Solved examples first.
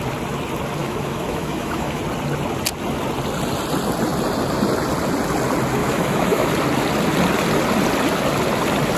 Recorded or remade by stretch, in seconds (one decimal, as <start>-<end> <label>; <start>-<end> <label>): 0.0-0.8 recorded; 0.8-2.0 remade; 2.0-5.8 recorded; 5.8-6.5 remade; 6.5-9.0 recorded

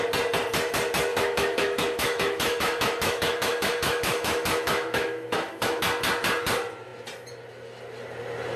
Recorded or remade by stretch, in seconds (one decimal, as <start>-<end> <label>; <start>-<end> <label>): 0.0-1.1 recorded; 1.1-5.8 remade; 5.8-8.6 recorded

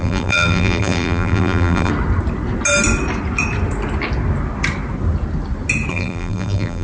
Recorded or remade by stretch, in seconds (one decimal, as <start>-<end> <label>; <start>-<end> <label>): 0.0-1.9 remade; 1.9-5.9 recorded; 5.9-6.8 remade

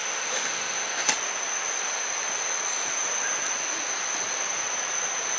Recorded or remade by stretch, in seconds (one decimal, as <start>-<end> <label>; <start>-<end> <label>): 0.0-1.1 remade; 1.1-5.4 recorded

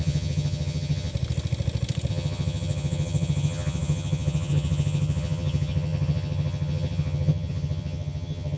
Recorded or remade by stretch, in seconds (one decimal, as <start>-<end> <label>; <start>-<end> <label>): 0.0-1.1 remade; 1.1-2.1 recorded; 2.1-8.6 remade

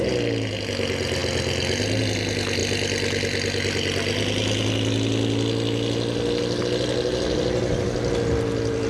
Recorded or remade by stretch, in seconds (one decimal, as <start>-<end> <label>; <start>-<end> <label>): 0.0-8.9 recorded

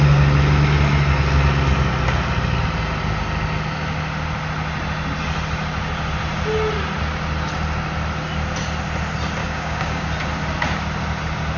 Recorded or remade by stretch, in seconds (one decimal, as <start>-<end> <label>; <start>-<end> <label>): 0.0-9.4 recorded; 9.4-10.1 remade; 10.1-11.6 recorded